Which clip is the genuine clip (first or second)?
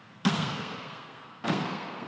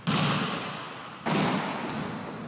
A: second